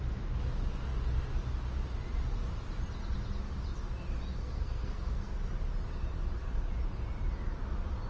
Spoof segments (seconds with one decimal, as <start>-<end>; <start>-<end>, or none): 4.3-5.5